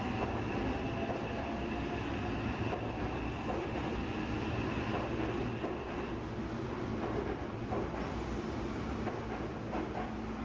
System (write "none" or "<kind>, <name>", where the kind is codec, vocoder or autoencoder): none